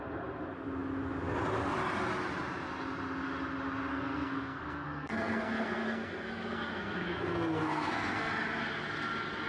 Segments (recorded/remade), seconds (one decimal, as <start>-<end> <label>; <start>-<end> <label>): 0.0-3.9 recorded; 3.9-8.3 remade; 8.3-9.5 recorded